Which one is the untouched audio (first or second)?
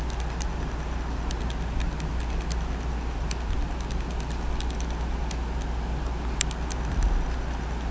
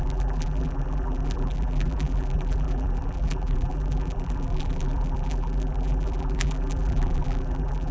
first